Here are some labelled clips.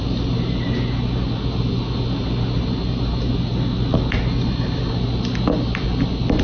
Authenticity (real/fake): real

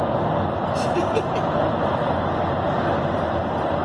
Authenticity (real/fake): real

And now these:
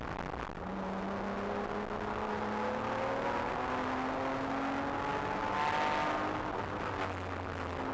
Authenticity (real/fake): real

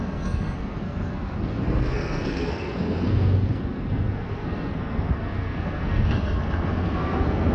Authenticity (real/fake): fake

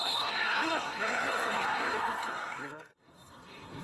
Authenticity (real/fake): fake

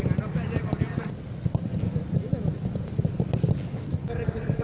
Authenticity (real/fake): real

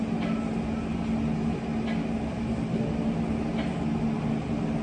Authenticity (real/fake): real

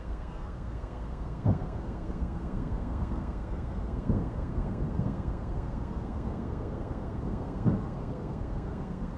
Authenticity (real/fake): fake